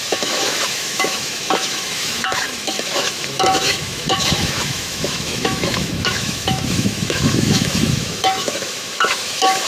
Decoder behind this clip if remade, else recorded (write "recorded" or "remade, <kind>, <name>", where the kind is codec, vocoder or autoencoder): remade, autoencoder, DAC-VAE